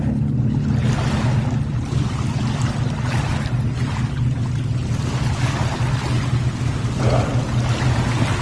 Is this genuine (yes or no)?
yes